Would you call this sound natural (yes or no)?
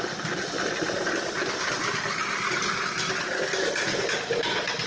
yes